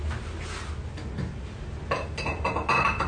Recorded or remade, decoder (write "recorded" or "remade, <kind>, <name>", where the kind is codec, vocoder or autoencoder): recorded